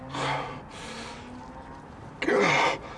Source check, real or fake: real